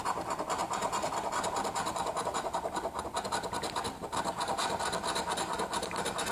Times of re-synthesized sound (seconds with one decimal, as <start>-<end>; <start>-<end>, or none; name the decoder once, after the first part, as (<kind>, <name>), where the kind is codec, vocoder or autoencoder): none